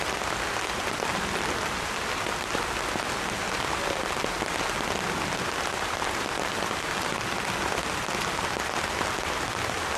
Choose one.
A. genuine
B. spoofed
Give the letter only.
A